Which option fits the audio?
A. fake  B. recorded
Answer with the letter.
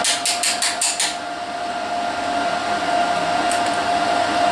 B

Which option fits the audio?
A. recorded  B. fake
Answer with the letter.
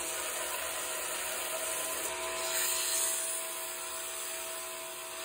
A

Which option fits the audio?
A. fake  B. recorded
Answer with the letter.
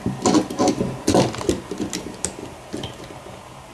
B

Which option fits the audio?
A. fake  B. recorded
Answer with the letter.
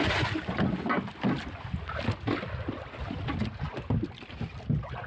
B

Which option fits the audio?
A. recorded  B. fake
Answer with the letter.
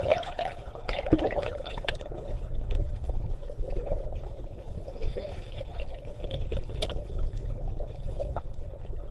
B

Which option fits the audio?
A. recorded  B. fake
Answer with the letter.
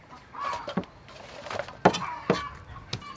A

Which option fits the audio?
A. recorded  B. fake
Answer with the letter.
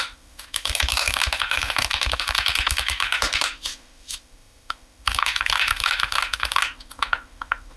B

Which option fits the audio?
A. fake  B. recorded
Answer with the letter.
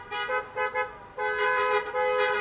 B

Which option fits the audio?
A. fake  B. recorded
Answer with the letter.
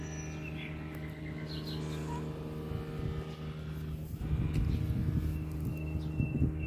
B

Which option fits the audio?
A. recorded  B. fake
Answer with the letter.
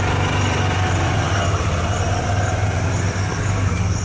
A